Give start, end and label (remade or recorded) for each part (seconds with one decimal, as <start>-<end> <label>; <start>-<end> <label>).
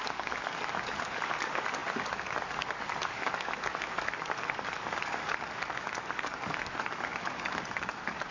0.0-8.3 remade